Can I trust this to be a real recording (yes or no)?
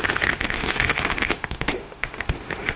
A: no